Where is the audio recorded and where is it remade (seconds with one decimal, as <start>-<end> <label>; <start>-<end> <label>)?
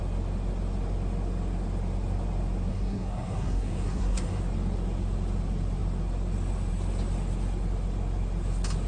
0.0-2.7 recorded; 2.7-4.4 remade; 4.4-8.9 recorded